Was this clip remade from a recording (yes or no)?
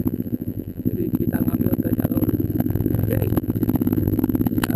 yes